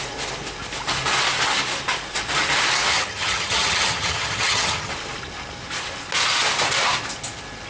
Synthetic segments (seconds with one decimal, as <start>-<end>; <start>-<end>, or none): 2.9-4.9